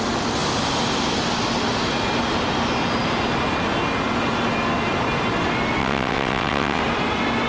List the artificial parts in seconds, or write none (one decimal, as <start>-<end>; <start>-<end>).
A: 5.8-6.8